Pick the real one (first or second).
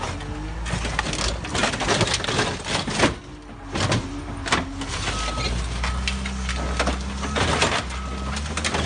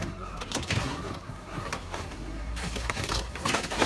first